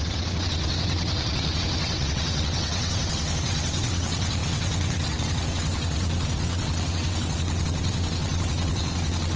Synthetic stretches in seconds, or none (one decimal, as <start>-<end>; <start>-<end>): 0.0-9.4

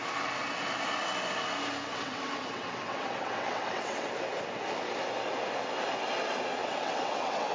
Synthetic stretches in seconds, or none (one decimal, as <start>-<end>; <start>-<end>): 1.9-4.1; 6.6-7.5